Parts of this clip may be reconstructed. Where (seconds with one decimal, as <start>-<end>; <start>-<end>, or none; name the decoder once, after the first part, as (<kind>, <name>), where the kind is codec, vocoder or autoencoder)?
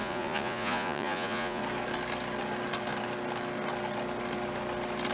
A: 0.0-1.6 (vocoder, Vocos)